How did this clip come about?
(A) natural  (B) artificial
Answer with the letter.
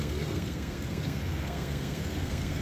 B